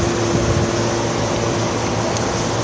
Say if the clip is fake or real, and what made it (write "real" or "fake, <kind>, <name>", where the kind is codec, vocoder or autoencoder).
real